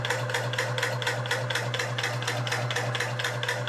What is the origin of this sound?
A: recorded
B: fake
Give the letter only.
A